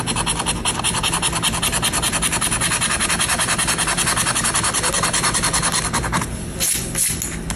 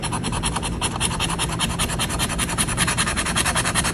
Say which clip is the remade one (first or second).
second